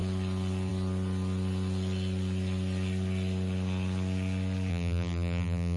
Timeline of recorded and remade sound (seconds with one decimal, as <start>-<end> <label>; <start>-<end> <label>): 0.0-4.7 recorded; 4.7-5.8 remade

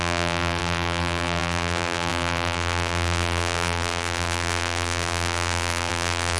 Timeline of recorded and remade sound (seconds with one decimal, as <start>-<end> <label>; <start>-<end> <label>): 0.0-6.4 remade

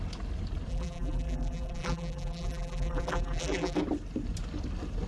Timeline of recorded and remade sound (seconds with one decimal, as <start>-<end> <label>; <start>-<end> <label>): 0.0-0.7 recorded; 0.7-3.8 remade; 3.8-5.1 recorded

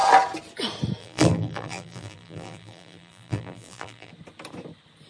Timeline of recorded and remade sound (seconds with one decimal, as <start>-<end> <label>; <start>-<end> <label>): 0.0-1.0 recorded; 1.0-4.1 remade; 4.1-5.1 recorded

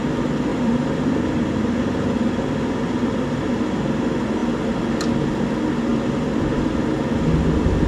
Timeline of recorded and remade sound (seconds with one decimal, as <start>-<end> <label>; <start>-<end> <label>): 0.0-0.5 recorded; 0.5-3.5 remade; 3.5-5.9 recorded; 5.9-6.9 remade; 6.9-7.9 recorded

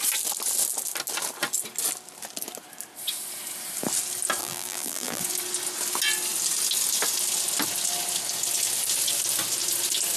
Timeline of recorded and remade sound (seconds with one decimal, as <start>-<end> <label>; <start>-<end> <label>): 0.0-4.4 recorded; 4.4-5.2 remade; 5.2-10.2 recorded